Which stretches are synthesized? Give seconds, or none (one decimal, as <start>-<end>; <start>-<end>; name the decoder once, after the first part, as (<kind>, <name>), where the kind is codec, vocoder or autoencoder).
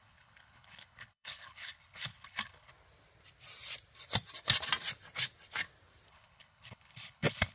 0.0-2.7 (codec, HILCodec); 6.1-7.5